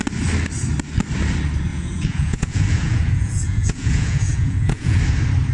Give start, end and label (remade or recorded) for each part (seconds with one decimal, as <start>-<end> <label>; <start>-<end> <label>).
0.0-1.7 recorded; 1.7-5.0 remade; 5.0-5.5 recorded